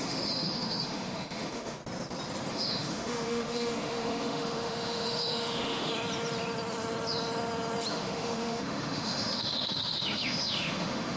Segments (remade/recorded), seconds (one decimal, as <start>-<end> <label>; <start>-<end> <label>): 0.0-1.8 remade; 1.8-2.5 recorded; 2.5-5.9 remade; 5.9-7.9 recorded; 7.9-11.2 remade

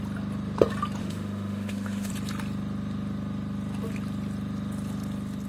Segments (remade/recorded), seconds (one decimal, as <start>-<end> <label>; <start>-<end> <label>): 0.0-1.0 recorded; 1.0-2.1 remade; 2.1-5.5 recorded